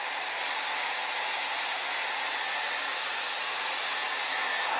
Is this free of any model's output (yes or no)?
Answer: yes